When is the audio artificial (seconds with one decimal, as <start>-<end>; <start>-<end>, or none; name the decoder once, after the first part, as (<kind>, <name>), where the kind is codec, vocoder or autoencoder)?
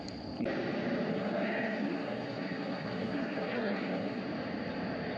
1.1-4.2 (codec, SNAC)